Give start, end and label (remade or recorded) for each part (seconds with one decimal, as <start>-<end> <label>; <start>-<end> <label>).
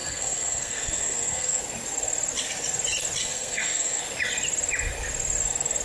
0.0-1.6 remade; 1.6-3.2 recorded; 3.2-4.0 remade; 4.0-5.8 recorded